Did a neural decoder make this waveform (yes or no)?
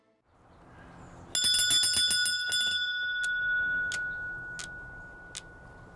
no